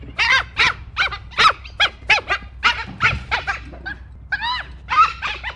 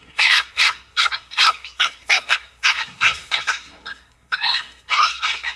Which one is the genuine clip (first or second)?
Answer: first